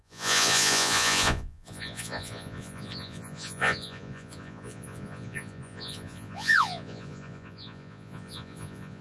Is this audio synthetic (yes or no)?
yes